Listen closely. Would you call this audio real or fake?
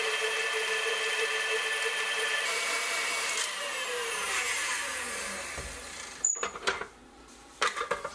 fake